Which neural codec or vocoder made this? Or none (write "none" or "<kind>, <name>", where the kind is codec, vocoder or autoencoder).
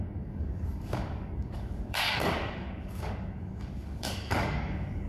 codec, DAC